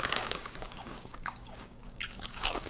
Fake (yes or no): yes